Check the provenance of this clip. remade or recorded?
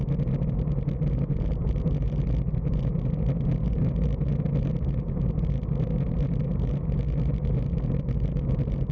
recorded